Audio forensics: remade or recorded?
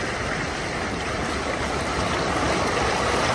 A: recorded